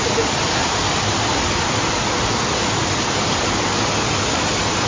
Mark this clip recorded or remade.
recorded